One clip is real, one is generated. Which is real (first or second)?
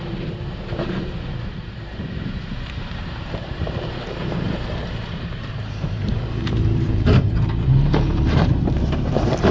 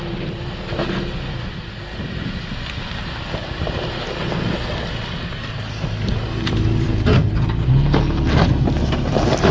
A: second